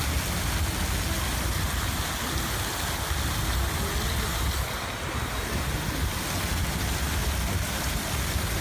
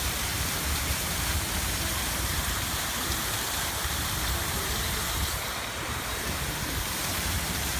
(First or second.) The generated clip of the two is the second